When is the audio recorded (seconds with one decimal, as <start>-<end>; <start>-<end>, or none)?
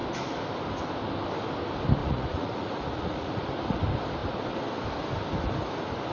0.0-2.0; 3.4-6.1